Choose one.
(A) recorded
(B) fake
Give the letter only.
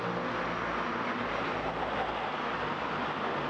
A